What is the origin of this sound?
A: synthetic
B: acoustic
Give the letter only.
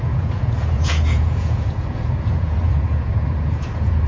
A